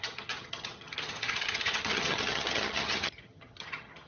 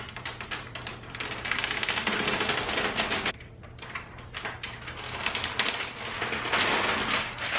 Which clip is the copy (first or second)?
first